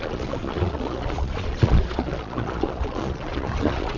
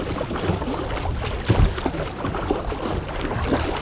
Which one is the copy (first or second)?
first